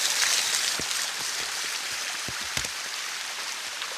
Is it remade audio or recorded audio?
remade